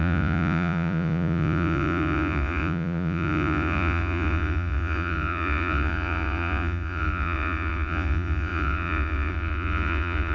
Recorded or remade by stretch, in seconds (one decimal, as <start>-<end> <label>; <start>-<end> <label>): 0.0-10.3 remade